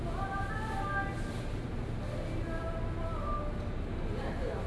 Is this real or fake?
real